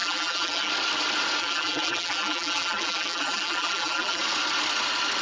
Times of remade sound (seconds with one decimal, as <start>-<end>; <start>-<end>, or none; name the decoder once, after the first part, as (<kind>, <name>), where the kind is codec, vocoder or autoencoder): 0.0-0.7 (vocoder, BigVGAN v2); 1.4-4.2